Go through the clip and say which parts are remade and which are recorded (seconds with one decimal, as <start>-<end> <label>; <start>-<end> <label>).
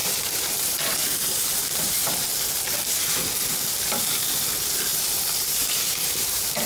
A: 0.0-6.7 remade